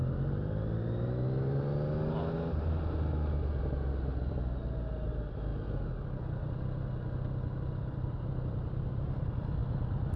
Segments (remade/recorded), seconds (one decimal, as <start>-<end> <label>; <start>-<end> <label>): 0.0-3.6 recorded; 3.6-5.5 remade; 5.5-7.8 recorded; 7.8-9.6 remade; 9.6-10.2 recorded